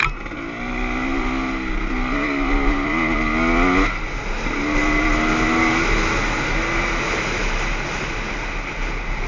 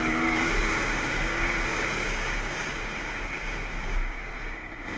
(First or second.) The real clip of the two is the first